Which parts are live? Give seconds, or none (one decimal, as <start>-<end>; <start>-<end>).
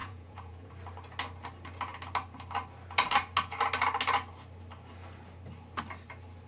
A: 0.7-6.5